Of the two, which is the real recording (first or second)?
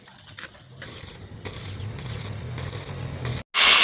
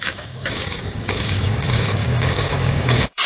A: first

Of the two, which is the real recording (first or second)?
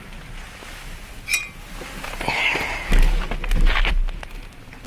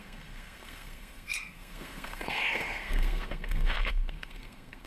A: first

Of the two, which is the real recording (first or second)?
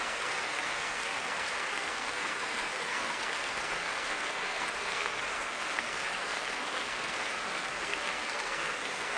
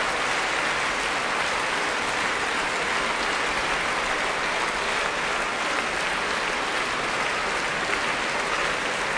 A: second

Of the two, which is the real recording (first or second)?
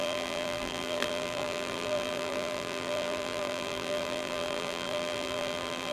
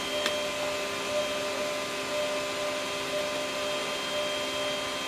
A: second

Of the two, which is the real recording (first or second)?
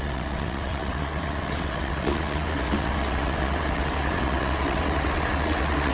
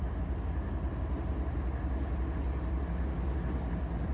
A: second